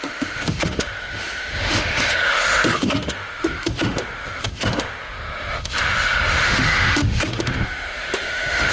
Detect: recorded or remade remade